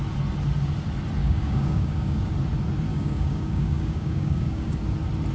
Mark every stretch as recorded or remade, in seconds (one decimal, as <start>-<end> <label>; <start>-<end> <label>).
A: 0.0-1.2 recorded; 1.2-2.3 remade; 2.3-2.9 recorded; 2.9-4.8 remade; 4.8-5.3 recorded